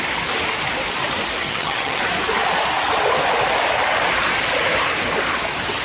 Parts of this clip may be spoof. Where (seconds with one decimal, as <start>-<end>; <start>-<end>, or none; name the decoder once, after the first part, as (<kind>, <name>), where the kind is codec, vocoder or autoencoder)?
1.4-2.0 (vocoder, HiFi-GAN)